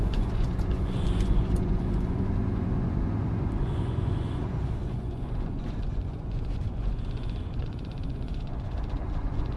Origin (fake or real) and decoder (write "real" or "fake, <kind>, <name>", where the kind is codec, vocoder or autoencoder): fake, vocoder, Vocos